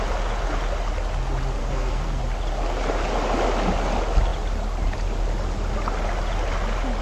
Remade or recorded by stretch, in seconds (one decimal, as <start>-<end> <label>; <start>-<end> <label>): 0.0-1.6 recorded; 1.6-2.2 remade; 2.2-7.0 recorded